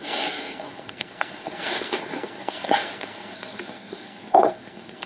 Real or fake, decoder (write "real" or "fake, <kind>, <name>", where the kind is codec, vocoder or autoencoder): fake, codec, SNAC